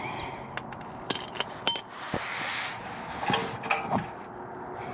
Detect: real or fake real